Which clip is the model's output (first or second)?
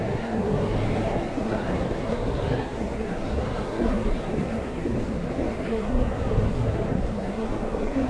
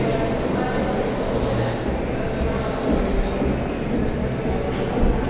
first